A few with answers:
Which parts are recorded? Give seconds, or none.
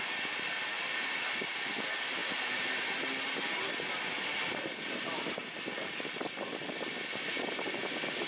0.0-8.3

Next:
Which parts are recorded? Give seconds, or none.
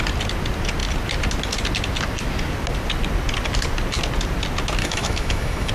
0.0-4.8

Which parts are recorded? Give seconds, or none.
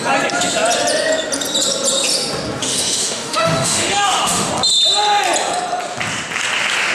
0.0-2.6; 4.5-6.9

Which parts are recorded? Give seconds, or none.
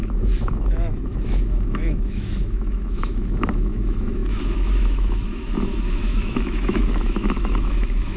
none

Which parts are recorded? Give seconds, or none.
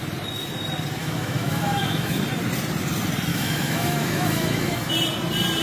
0.0-1.0; 2.2-3.3; 4.9-5.6